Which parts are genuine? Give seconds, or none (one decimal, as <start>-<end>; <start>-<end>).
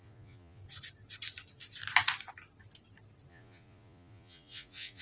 0.6-3.3